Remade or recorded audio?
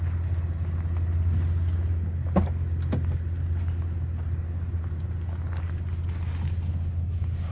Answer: recorded